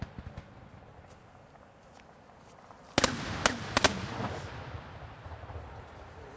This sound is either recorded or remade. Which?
recorded